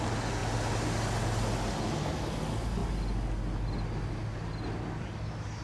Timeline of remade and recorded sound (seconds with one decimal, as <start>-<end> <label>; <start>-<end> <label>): 0.0-5.6 recorded